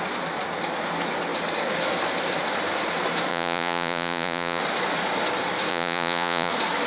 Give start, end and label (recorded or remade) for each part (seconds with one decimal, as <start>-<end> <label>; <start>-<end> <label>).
0.0-3.3 recorded; 3.3-4.6 remade; 4.6-5.7 recorded; 5.7-6.5 remade; 6.5-6.9 recorded